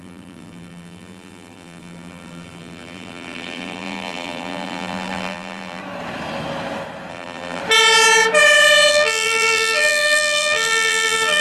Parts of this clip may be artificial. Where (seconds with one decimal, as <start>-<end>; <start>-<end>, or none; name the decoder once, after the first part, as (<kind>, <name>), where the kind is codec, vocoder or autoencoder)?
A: 0.0-5.8 (vocoder, BigVGAN v2); 7.1-7.6; 8.9-11.4